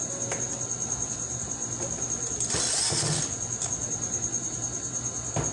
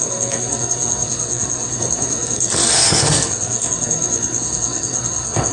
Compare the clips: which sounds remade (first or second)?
second